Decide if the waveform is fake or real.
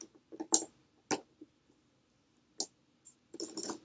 real